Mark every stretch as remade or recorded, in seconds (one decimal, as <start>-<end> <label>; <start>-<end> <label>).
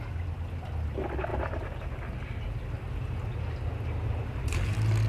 0.0-5.1 recorded